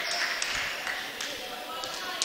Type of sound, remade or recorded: recorded